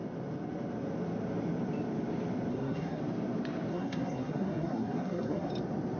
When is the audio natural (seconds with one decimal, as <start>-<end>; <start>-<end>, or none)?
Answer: 0.0-2.5; 3.0-3.7; 5.5-6.0